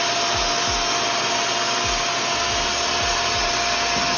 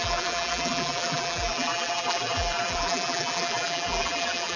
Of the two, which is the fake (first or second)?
second